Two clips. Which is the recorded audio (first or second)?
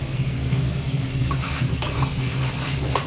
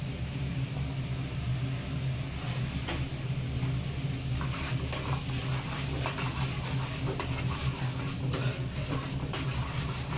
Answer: second